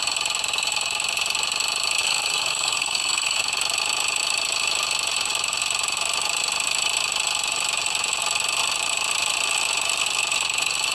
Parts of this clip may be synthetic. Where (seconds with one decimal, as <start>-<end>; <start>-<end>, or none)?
2.0-3.4